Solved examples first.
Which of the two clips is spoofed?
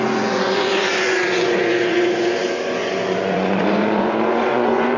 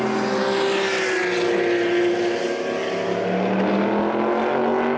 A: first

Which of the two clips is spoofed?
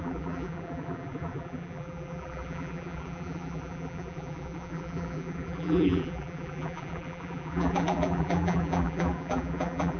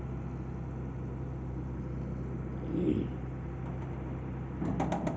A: first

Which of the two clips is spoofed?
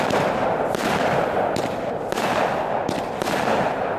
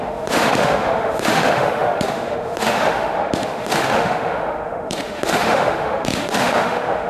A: second